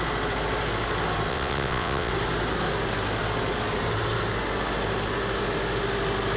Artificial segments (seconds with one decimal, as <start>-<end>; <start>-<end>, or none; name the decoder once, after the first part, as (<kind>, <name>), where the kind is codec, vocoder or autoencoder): 1.3-2.1 (vocoder, WaveNeXt)